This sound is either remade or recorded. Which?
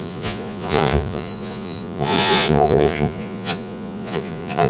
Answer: remade